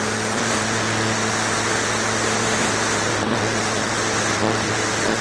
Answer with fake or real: real